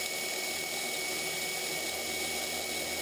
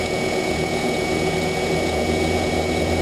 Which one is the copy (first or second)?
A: second